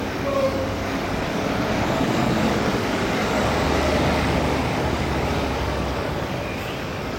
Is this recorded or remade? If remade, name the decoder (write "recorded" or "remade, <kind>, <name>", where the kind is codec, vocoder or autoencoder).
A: remade, codec, DAC